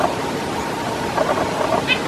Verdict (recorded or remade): recorded